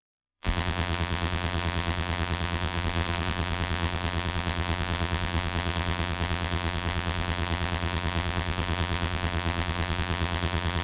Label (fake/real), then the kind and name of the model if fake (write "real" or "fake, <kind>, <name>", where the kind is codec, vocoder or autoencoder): fake, vocoder, BigVGAN v2